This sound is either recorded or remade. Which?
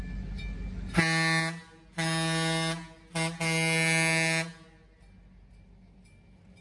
recorded